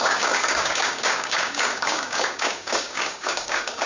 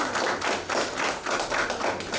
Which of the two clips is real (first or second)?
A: second